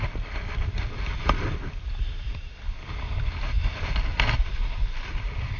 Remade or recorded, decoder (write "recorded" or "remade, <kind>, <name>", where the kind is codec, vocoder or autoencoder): recorded